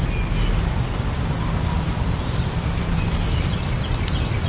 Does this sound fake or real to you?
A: real